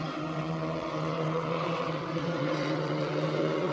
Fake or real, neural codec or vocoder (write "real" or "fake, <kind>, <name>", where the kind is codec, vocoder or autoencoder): fake, vocoder, WaveNeXt